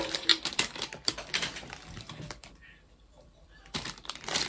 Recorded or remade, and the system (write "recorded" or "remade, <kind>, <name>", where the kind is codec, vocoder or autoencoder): remade, vocoder, BigVGAN v2